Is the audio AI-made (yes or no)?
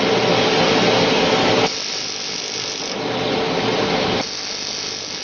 no